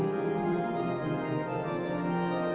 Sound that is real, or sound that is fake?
real